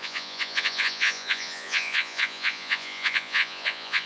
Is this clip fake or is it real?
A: fake